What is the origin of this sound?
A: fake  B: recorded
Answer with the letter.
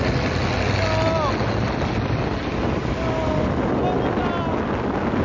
B